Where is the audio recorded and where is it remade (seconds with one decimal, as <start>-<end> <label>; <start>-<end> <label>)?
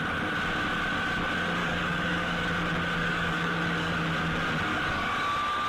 0.0-1.6 recorded; 1.6-2.4 remade; 2.4-3.0 recorded; 3.0-3.9 remade; 3.9-4.7 recorded; 4.7-5.3 remade; 5.3-5.7 recorded